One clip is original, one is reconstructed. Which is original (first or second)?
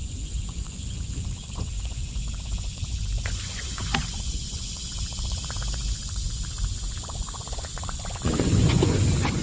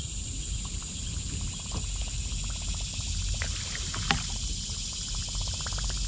second